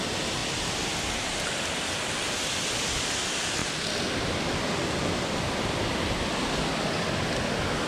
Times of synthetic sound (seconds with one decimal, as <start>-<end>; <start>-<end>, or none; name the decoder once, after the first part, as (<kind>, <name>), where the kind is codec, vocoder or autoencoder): none